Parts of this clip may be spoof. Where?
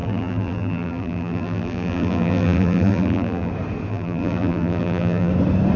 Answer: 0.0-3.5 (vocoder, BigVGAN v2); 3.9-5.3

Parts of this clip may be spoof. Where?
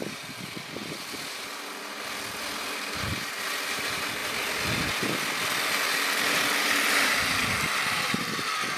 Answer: none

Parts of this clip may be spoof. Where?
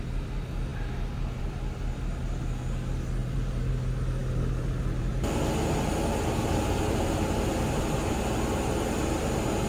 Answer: 3.2-3.7 (vocoder, BigVGAN v2); 6.4-7.0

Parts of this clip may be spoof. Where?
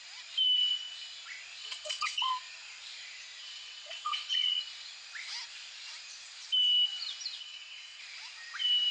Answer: 1.6-2.3 (vocoder, WaveNeXt); 3.4-4.6; 7.4-8.0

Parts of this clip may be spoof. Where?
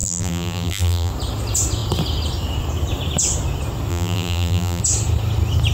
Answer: 0.0-1.1 (vocoder, BigVGAN v2); 3.9-4.8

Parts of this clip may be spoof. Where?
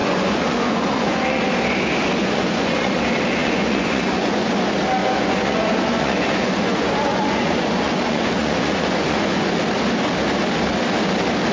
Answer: 0.0-1.4 (vocoder, Vocos); 2.2-3.0; 3.4-4.5; 5.0-9.6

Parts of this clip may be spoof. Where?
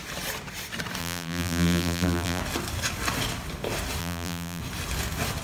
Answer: 1.0-2.4 (vocoder, BigVGAN v2); 4.0-4.6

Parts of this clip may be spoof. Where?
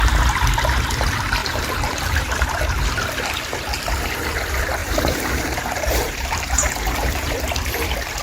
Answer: 1.4-2.6 (vocoder, BigVGAN v2); 4.8-7.4